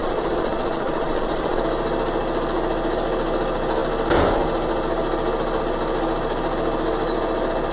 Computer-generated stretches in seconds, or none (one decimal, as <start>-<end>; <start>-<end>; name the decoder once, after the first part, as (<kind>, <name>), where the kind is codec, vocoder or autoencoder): 0.0-1.6 (vocoder, Vocos)